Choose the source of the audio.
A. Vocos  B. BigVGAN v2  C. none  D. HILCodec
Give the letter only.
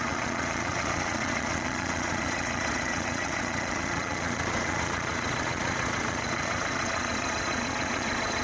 A